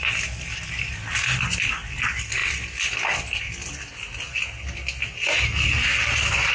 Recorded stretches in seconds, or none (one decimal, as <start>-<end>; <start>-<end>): 0.0-6.5